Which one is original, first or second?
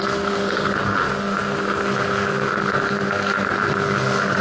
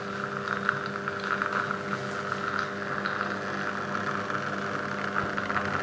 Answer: second